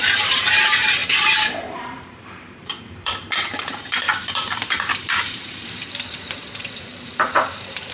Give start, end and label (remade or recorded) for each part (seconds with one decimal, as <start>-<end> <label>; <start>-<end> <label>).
0.0-7.9 remade